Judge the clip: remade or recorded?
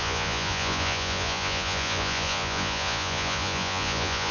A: remade